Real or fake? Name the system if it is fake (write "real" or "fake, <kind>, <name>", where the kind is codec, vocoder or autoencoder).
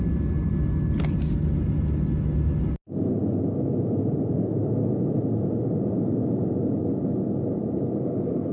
real